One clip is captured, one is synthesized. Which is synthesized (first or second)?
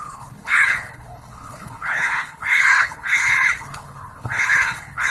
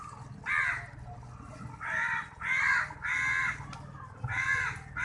first